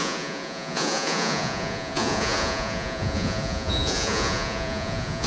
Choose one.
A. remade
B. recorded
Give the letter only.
A